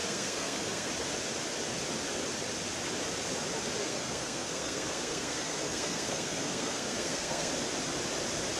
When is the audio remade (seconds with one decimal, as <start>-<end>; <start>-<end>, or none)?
0.0-0.9; 3.8-7.5